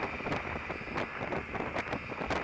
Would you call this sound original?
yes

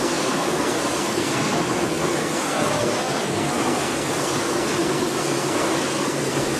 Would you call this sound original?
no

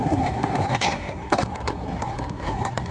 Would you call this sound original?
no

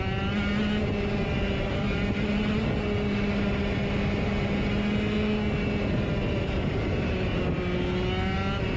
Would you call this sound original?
yes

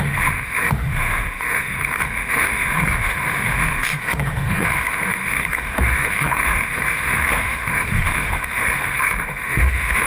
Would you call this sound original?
no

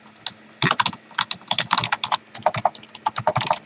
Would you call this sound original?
yes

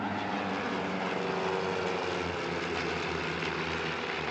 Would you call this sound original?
yes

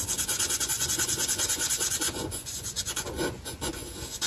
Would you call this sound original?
no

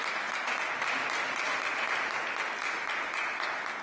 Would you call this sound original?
yes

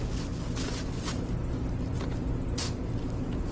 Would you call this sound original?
yes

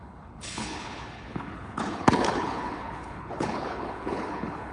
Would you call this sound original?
no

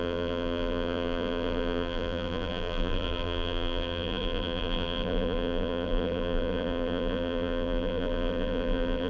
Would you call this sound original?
no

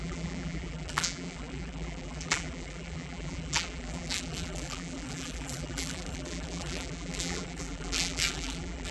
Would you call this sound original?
no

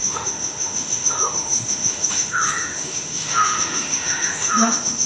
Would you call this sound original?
no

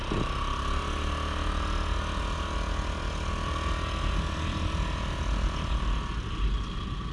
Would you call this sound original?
yes